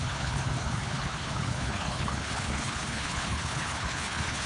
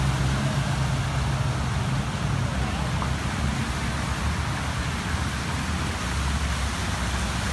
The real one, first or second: second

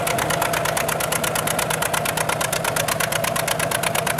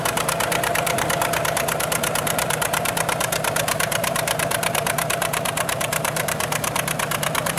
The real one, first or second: first